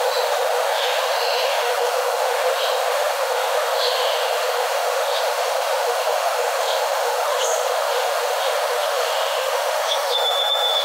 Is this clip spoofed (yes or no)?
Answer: yes